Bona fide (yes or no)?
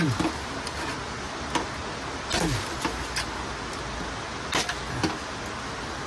yes